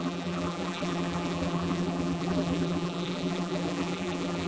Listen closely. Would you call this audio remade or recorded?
remade